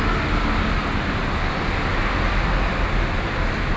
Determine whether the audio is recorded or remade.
recorded